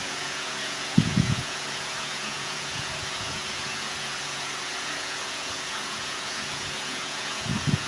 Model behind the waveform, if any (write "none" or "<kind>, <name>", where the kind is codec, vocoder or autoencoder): vocoder, Vocos